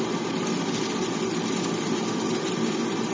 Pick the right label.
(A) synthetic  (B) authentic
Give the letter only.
B